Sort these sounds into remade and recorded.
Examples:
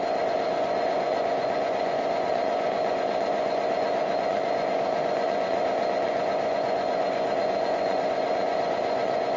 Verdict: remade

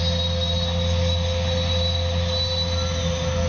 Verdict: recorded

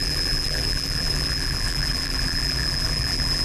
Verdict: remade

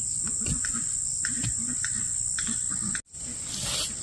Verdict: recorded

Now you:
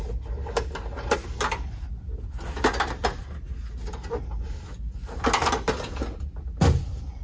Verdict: recorded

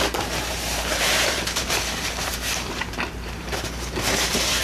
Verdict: remade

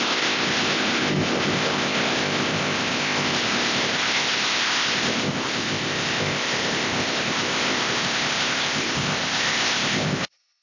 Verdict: remade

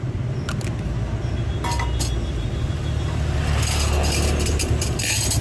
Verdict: recorded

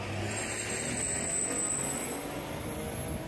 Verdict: recorded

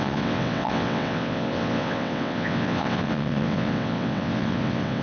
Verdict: remade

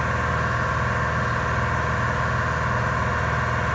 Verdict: recorded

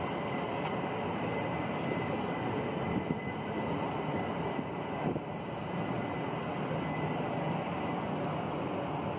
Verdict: recorded